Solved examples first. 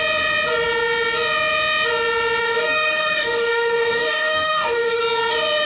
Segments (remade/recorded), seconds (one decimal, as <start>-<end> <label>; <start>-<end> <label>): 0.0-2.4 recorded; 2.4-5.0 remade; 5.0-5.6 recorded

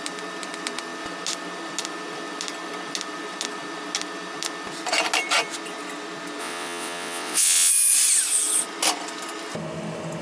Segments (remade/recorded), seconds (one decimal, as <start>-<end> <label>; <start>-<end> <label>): 0.0-6.4 recorded; 6.4-7.7 remade; 7.7-10.2 recorded

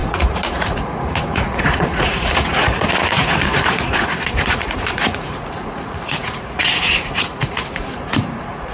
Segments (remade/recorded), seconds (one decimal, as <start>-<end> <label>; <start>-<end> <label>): 0.0-8.7 remade

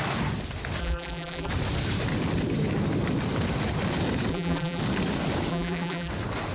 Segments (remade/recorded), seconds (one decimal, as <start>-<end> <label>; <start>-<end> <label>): 0.0-0.8 recorded; 0.8-1.5 remade; 1.5-4.3 recorded; 4.3-4.8 remade; 4.8-5.5 recorded; 5.5-6.1 remade; 6.1-6.5 recorded

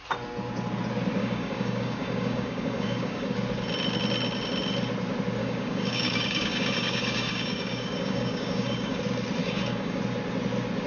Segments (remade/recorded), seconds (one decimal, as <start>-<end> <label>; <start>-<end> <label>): 0.0-1.2 recorded; 1.2-3.3 remade; 3.3-5.4 recorded; 5.4-9.0 remade; 9.0-9.4 recorded; 9.4-10.0 remade; 10.0-10.9 recorded